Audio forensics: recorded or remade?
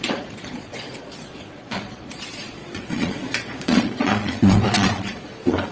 remade